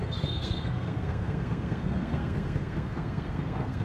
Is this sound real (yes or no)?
no